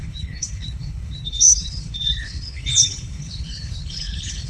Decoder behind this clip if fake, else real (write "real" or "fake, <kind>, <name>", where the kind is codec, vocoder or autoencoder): fake, codec, HILCodec